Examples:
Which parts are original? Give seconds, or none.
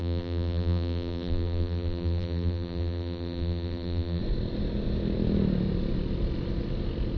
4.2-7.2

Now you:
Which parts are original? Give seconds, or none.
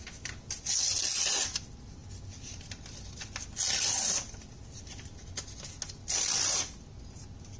0.0-7.6